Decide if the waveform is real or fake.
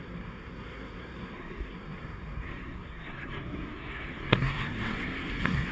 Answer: fake